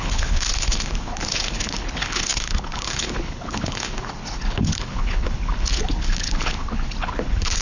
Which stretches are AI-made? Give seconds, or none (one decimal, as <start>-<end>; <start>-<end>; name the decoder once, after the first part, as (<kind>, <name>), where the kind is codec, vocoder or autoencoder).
0.0-7.6 (codec, HILCodec)